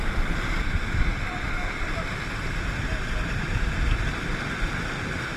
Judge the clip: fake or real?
real